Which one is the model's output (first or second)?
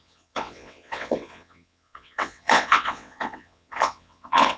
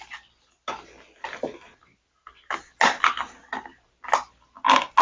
first